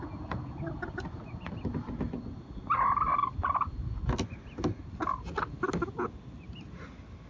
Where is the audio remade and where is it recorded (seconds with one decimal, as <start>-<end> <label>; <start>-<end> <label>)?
0.0-7.3 recorded

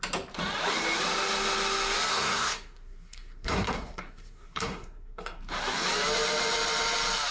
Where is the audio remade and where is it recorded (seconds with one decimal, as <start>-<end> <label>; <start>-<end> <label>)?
0.0-2.1 recorded; 2.1-5.4 remade; 5.4-7.3 recorded

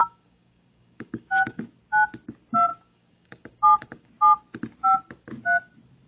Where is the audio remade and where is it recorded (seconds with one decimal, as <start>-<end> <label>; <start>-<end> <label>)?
0.0-1.6 remade; 1.6-2.7 recorded; 2.7-4.1 remade; 4.1-6.1 recorded

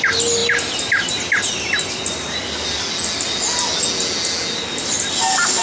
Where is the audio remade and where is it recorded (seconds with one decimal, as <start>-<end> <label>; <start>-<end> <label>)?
0.0-5.6 recorded